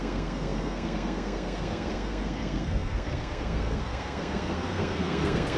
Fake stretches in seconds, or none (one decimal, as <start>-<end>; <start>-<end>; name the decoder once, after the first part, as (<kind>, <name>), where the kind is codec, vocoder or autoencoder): 0.0-5.6 (codec, SNAC)